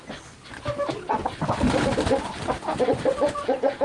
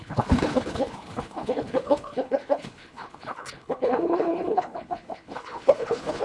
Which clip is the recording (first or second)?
first